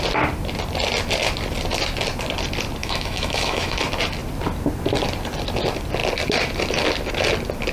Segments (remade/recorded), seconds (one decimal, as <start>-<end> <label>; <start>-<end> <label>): 0.0-2.8 recorded; 2.8-3.8 remade; 3.8-7.7 recorded